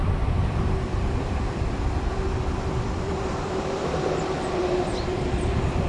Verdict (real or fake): fake